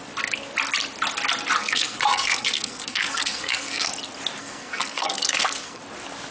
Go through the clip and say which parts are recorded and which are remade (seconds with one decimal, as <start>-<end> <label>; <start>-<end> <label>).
0.0-1.6 recorded; 1.6-3.9 remade; 3.9-4.4 recorded; 4.4-5.8 remade; 5.8-6.3 recorded